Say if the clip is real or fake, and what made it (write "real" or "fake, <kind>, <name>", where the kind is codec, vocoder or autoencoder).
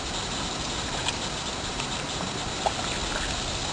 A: real